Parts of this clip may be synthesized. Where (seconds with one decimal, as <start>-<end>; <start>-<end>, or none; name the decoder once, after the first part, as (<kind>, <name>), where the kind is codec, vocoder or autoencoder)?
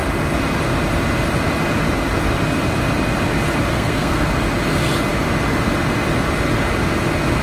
3.7-4.3 (codec, SNAC)